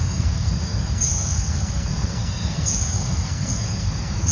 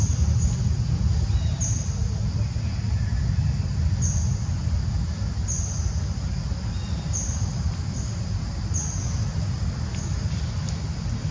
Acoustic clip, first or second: second